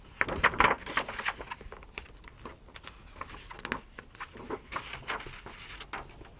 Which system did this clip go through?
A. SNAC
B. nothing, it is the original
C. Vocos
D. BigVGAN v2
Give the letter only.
B